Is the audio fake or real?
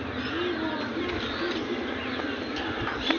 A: real